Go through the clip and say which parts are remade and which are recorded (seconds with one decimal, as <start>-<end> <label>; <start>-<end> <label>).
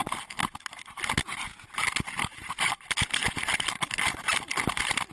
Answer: 0.0-5.1 recorded